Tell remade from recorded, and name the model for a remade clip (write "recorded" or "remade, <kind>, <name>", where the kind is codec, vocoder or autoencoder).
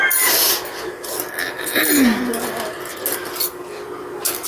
recorded